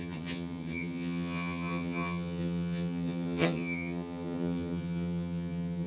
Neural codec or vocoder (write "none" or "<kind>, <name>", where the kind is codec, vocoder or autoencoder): vocoder, HiFi-GAN